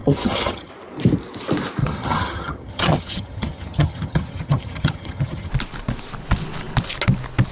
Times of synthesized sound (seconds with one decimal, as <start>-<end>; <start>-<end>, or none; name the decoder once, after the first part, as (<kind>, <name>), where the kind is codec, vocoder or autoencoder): 0.0-0.7 (vocoder, HiFi-GAN); 1.8-5.5